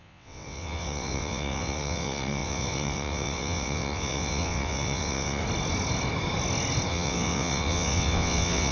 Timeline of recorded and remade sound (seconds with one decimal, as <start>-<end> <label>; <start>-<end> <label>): 0.0-5.4 remade; 5.4-6.9 recorded; 6.9-8.7 remade